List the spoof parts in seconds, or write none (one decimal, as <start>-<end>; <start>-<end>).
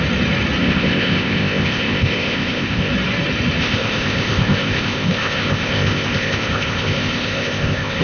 0.6-2.9; 3.6-8.0